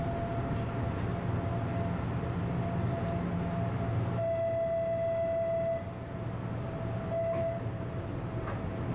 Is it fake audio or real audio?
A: real